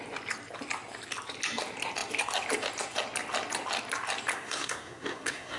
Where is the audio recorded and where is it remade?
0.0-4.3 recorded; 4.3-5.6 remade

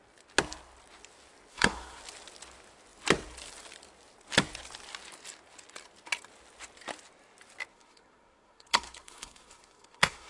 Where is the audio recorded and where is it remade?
0.0-1.5 recorded; 1.5-2.0 remade; 2.0-7.7 recorded; 7.7-10.3 remade

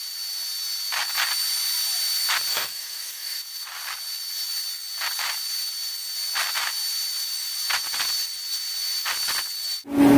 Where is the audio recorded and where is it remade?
0.0-2.5 recorded; 2.5-3.4 remade; 3.4-10.2 recorded

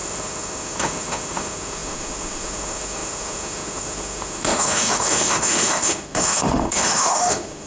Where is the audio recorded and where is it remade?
0.0-7.7 remade

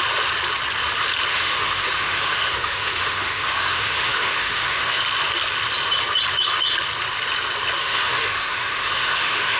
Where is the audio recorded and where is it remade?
0.0-1.3 recorded; 1.3-5.0 remade; 5.0-7.8 recorded; 7.8-9.6 remade